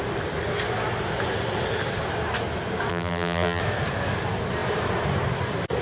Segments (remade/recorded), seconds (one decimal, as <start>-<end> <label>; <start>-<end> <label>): 0.0-2.9 recorded; 2.9-3.6 remade; 3.6-5.8 recorded